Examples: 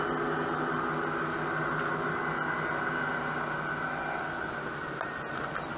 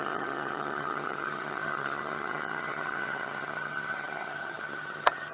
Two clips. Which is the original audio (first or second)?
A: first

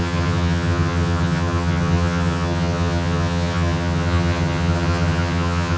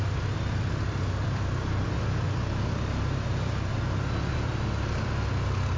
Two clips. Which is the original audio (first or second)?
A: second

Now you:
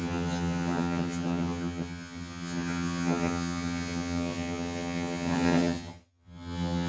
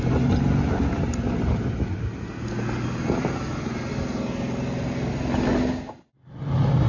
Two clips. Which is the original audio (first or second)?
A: second